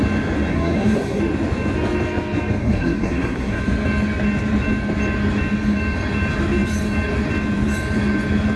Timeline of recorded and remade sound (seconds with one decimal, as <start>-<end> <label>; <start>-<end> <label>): 0.0-0.5 recorded; 0.5-1.2 remade; 1.2-2.6 recorded; 2.6-3.6 remade; 3.6-8.6 recorded